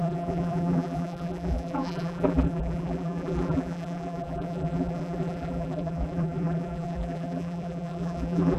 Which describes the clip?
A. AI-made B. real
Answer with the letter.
A